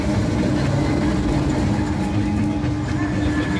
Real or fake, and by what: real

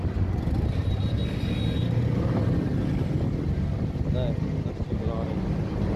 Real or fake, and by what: real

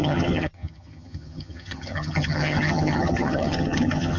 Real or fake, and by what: fake, vocoder, HiFi-GAN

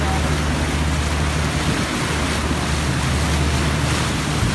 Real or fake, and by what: real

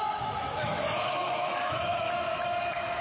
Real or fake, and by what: fake, autoencoder, DAC-VAE